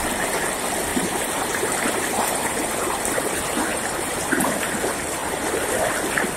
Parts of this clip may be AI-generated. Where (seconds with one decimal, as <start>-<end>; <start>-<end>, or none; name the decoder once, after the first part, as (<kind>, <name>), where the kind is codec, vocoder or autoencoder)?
0.9-4.7 (vocoder, BigVGAN v2); 5.2-5.8

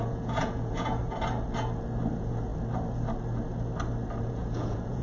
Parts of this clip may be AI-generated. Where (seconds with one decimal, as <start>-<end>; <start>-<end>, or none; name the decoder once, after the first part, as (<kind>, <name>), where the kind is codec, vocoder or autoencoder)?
0.0-1.0 (vocoder, Vocos); 2.1-2.5; 4.2-5.0

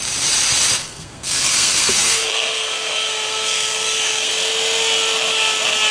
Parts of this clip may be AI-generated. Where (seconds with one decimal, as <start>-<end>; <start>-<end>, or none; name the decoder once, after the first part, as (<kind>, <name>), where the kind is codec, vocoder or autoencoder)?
0.8-4.3 (codec, SNAC)

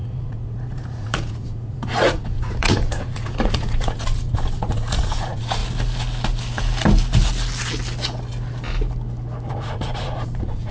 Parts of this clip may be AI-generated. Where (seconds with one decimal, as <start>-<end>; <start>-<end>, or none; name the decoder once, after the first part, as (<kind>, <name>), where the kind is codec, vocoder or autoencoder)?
0.0-5.6 (vocoder, Vocos); 9.5-10.7

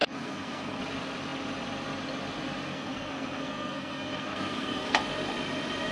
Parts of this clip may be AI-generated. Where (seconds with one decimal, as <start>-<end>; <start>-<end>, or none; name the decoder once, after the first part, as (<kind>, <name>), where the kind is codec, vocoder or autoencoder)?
0.0-0.8 (codec, SNAC); 2.7-5.0

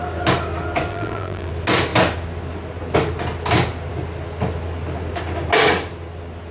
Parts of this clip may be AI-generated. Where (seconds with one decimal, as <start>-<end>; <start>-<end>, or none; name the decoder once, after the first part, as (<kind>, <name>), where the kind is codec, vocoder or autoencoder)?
0.9-1.5 (vocoder, BigVGAN v2)

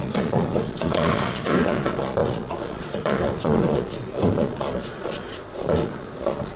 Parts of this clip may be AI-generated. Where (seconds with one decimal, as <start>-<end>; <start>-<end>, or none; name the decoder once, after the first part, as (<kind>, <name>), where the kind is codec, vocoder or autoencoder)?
0.0-6.6 (vocoder, Vocos)